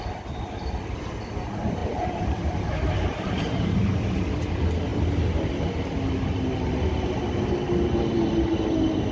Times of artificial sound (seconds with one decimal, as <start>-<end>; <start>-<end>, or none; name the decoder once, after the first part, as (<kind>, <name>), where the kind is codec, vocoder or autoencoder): 1.8-2.5 (vocoder, BigVGAN v2); 3.0-4.0